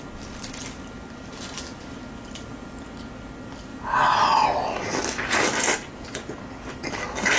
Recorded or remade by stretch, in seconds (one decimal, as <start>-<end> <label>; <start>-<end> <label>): 0.0-3.7 recorded; 3.7-7.4 remade